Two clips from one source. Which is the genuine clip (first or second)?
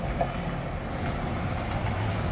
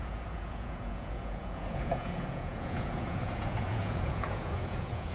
first